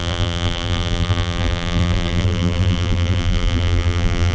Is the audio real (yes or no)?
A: no